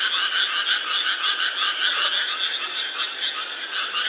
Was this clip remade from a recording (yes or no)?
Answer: no